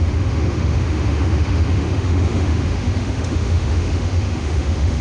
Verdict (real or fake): fake